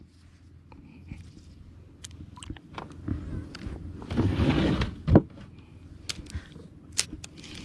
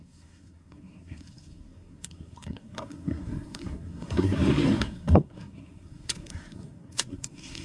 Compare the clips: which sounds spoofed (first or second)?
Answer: second